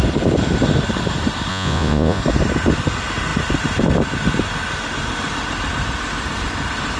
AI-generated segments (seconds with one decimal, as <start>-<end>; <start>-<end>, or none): 1.5-2.2